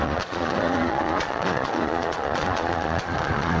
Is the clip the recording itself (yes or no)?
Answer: no